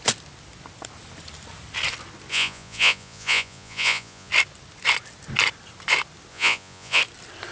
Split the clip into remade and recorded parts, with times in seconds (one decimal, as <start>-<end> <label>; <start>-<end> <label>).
0.0-2.3 recorded; 2.3-4.3 remade; 4.3-6.3 recorded; 6.3-7.0 remade; 7.0-7.5 recorded